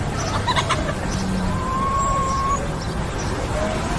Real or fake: real